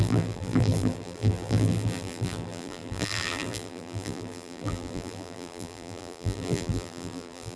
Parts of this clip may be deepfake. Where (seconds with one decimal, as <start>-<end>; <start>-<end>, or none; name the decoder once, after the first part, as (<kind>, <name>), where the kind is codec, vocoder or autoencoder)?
0.0-7.6 (vocoder, BigVGAN v2)